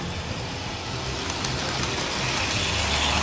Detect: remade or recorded recorded